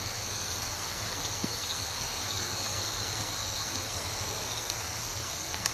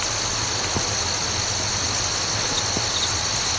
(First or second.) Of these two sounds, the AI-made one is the first